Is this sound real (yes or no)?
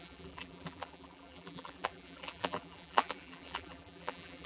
no